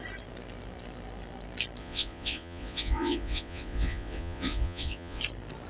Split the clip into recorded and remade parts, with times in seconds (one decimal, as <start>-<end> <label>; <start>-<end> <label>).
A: 0.0-1.8 recorded; 1.8-5.2 remade; 5.2-5.7 recorded